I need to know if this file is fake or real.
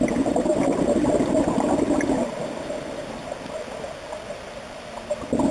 real